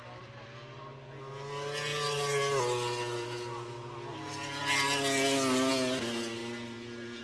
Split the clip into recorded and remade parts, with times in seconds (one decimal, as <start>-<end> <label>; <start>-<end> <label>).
0.0-7.2 recorded